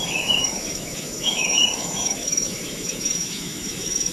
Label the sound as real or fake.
fake